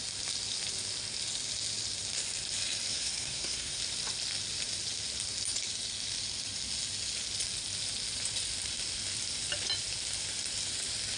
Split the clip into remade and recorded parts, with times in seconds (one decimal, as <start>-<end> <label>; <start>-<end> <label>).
0.0-2.9 recorded; 2.9-3.8 remade; 3.8-11.2 recorded